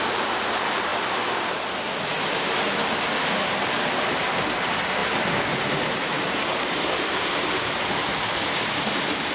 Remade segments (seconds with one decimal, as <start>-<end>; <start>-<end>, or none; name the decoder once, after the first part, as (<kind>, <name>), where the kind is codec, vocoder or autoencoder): 0.0-0.9 (vocoder, BigVGAN v2); 3.8-5.0; 6.0-9.3